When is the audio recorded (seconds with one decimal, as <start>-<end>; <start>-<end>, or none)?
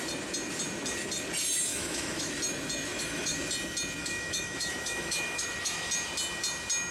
0.0-1.7; 2.3-2.9; 3.4-4.0; 5.9-6.9